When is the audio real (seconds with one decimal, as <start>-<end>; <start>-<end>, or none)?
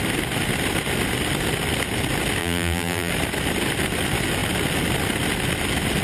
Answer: 0.0-2.4; 3.1-6.0